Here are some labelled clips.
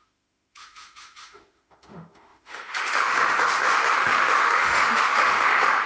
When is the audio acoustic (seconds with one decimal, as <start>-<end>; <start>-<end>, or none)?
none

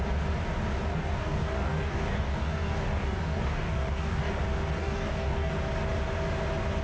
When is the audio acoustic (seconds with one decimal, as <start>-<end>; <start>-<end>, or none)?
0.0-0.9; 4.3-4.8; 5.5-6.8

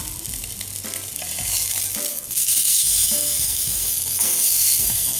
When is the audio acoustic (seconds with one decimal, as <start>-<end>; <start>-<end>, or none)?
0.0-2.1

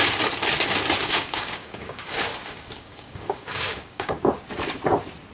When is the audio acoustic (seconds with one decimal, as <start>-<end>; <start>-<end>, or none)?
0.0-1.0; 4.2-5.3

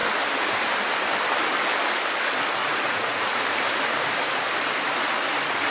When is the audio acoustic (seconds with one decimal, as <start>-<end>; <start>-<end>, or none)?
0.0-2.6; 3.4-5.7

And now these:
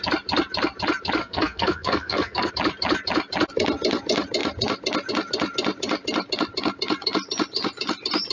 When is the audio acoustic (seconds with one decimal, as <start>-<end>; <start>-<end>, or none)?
0.0-1.2; 2.5-8.3

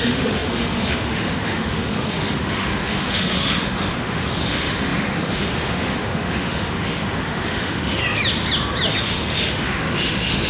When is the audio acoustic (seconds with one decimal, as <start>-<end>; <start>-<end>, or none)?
8.0-9.0

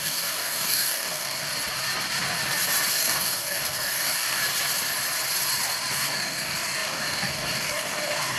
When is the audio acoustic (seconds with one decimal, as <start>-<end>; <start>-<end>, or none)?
1.5-2.9; 4.4-5.9